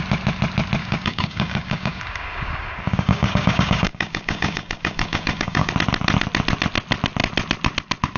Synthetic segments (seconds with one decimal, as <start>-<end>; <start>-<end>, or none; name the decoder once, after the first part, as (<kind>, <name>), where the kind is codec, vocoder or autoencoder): 0.8-5.7 (codec, DAC)